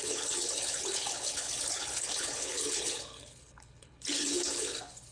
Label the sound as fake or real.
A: fake